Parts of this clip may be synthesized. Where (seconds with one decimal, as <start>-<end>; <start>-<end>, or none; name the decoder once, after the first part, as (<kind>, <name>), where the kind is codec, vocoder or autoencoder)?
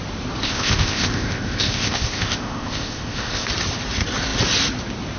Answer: 0.4-3.5 (codec, ZipCodec)